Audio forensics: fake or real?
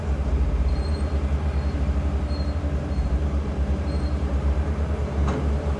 fake